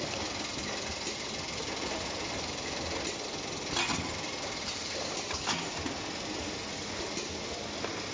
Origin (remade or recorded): recorded